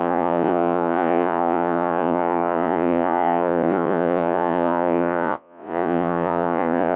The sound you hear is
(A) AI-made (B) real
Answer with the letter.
A